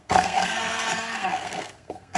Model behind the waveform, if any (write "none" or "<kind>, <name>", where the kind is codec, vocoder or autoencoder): codec, SNAC